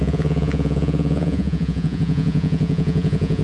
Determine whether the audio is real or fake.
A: fake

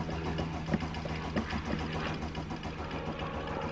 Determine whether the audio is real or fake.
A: real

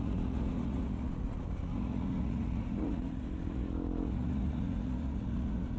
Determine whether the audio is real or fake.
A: fake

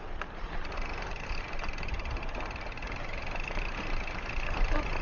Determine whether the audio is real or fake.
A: real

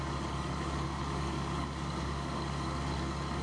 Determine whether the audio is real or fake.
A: fake